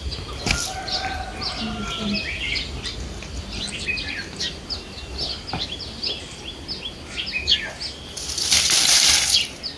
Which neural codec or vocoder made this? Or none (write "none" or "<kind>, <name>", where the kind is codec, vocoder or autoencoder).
none